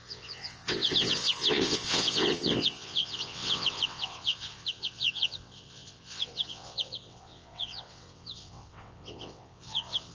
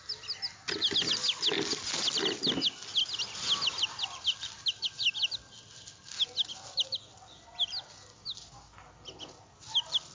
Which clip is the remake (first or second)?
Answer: first